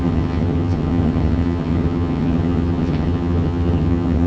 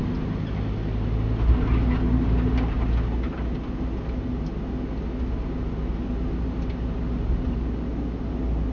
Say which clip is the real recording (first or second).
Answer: second